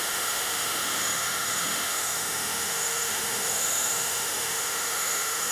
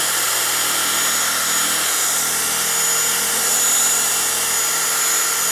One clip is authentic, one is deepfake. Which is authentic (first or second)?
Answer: second